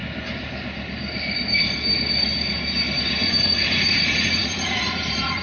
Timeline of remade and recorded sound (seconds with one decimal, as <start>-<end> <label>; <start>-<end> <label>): 0.0-3.2 recorded; 3.2-5.4 remade